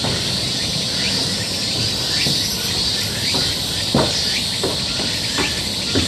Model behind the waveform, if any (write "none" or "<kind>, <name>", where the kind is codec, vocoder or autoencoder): none